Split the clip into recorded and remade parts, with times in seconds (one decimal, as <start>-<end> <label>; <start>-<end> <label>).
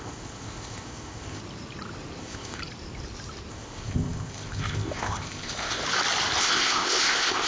0.0-1.4 remade; 1.4-2.2 recorded; 2.2-2.6 remade; 2.6-3.5 recorded; 3.5-5.8 remade; 5.8-6.4 recorded; 6.4-7.5 remade